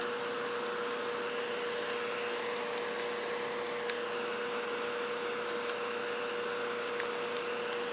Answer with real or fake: real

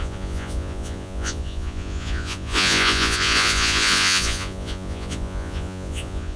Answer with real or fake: fake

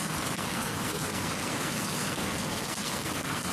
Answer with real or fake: fake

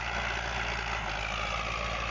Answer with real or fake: real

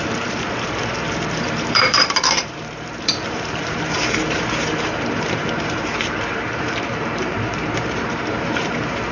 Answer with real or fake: fake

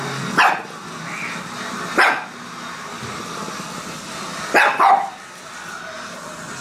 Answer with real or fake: real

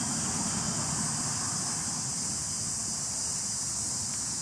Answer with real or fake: real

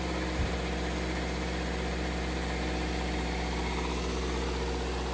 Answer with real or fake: real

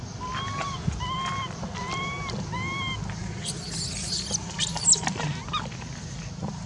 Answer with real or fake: real